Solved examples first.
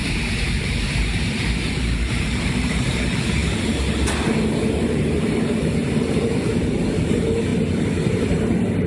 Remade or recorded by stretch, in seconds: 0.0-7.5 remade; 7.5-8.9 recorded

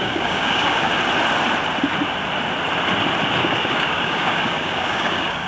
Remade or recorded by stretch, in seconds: 0.0-0.9 remade; 0.9-3.4 recorded; 3.4-5.5 remade

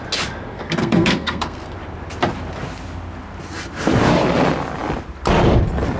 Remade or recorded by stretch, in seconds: 0.0-0.5 recorded; 0.5-1.7 remade; 1.7-6.0 recorded

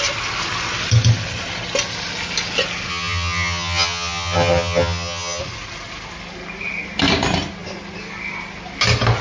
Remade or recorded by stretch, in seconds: 0.0-2.9 recorded; 2.9-5.4 remade; 5.4-9.2 recorded

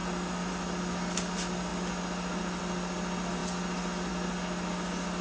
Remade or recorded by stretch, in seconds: 0.0-5.2 recorded

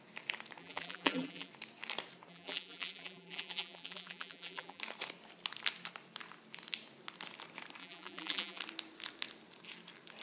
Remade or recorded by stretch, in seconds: 0.0-0.6 recorded; 0.6-1.5 remade; 1.5-2.3 recorded; 2.3-4.8 remade; 4.8-7.8 recorded; 7.8-8.6 remade; 8.6-10.2 recorded

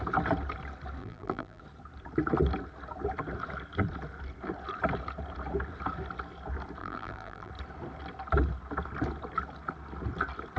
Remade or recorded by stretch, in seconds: 0.0-1.0 recorded; 1.0-1.6 remade; 1.6-6.8 recorded; 6.8-7.5 remade; 7.5-10.6 recorded